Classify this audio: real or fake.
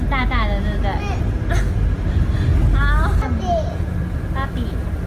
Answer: real